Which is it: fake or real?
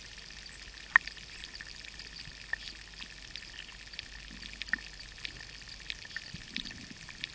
real